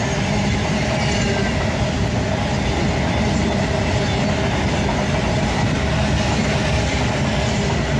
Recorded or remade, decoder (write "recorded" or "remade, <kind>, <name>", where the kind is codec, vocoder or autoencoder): recorded